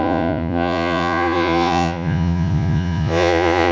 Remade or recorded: remade